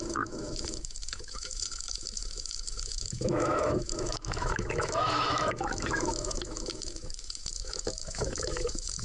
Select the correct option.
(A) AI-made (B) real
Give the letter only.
A